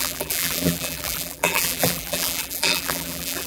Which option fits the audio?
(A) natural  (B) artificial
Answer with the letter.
B